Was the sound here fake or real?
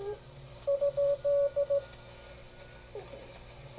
real